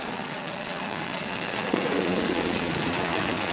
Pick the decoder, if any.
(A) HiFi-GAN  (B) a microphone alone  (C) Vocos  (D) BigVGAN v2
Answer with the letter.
C